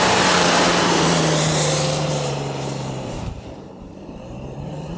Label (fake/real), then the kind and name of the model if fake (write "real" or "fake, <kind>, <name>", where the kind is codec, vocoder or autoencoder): fake, vocoder, BigVGAN v2